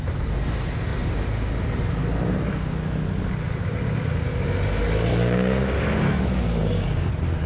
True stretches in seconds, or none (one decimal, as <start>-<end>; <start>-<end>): 0.0-5.1; 7.1-7.5